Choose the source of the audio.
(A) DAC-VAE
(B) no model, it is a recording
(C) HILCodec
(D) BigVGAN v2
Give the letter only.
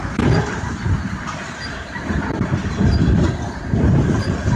B